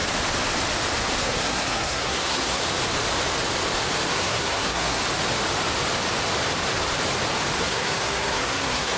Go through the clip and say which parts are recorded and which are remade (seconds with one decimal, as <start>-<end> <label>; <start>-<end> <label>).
0.0-1.2 recorded; 1.2-2.6 remade; 2.6-4.1 recorded; 4.1-5.0 remade; 5.0-7.6 recorded; 7.6-9.0 remade